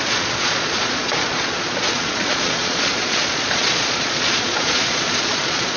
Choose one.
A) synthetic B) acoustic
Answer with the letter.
A